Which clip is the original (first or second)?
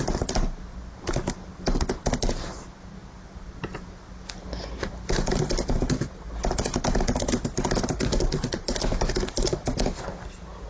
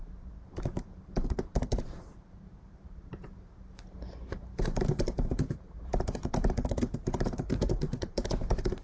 first